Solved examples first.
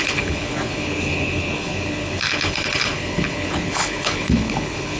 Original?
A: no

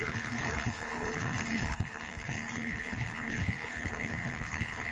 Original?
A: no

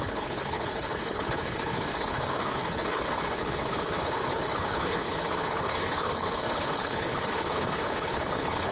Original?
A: no